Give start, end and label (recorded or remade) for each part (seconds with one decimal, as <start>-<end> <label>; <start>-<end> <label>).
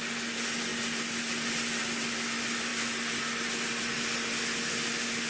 0.0-5.3 recorded